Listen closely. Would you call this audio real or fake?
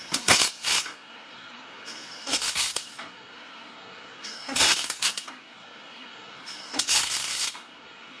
fake